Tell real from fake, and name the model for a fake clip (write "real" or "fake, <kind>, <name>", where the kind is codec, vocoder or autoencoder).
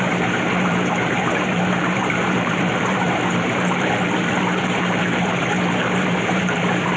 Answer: fake, vocoder, BigVGAN v2